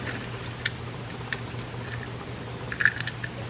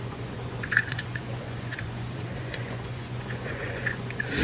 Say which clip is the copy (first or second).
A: second